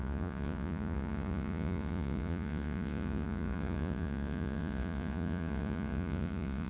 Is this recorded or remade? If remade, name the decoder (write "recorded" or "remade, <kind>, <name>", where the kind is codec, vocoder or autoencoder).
remade, vocoder, Vocos